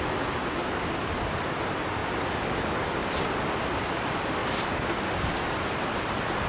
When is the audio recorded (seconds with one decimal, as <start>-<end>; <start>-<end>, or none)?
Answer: 0.0-6.5